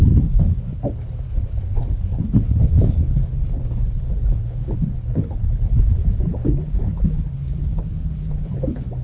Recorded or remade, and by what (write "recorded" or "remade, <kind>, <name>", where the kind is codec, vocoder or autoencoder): remade, codec, HILCodec